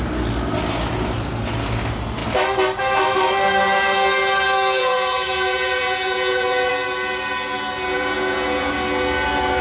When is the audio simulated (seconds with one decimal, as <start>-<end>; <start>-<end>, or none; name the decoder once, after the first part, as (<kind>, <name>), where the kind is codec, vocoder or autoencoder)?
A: 4.8-6.7 (vocoder, Vocos); 7.9-8.7